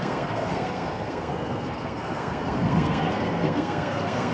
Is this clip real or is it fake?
fake